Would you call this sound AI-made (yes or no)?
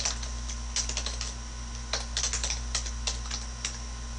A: no